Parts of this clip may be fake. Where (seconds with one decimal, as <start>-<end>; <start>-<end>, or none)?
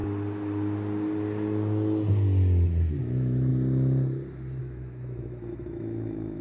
3.0-3.5; 4.6-6.4